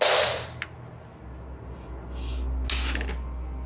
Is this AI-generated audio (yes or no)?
no